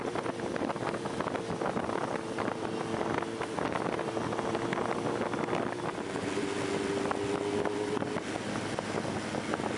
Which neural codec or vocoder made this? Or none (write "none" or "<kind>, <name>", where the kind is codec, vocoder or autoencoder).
none